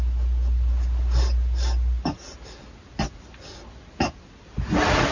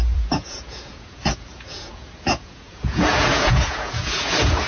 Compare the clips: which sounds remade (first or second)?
second